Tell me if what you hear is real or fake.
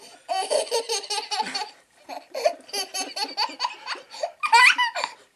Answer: real